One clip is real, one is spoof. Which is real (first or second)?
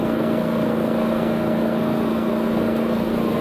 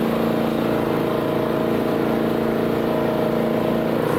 second